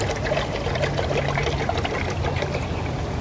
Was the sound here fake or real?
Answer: real